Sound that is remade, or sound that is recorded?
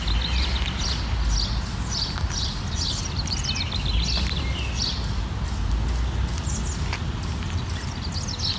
recorded